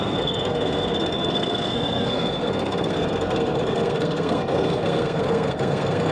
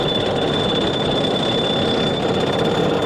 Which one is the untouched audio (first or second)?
second